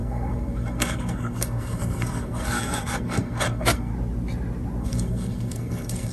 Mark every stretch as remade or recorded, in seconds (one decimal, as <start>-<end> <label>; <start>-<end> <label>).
0.0-3.9 remade; 3.9-4.8 recorded; 4.8-6.1 remade